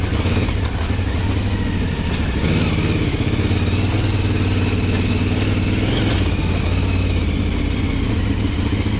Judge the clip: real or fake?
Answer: real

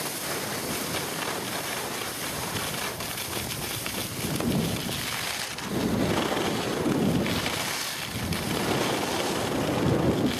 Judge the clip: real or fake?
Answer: real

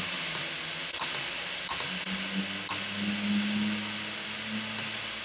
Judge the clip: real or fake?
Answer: real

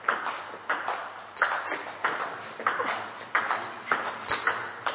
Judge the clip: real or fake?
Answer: real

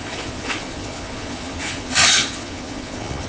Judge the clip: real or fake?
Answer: fake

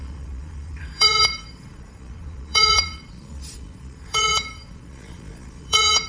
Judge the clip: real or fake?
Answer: fake